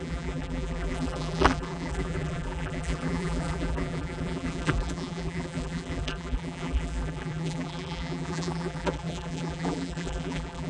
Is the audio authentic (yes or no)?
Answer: no